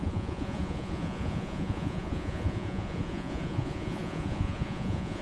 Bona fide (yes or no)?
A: no